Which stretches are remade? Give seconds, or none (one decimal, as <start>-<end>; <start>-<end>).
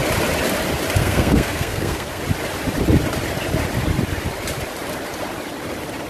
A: 1.0-2.2